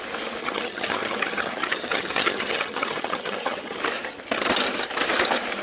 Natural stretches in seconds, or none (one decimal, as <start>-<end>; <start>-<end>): 0.0-0.4; 3.8-5.6